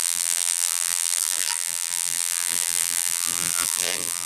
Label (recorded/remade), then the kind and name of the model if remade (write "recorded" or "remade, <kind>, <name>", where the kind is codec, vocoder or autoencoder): remade, vocoder, BigVGAN v2